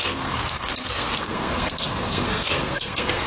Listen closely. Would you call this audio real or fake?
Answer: fake